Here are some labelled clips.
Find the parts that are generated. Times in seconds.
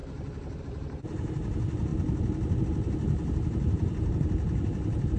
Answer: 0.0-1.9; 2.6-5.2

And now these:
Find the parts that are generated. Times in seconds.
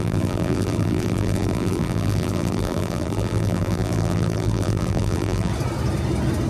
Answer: 0.0-5.5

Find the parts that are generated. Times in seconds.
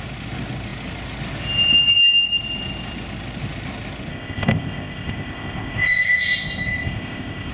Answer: 4.1-7.5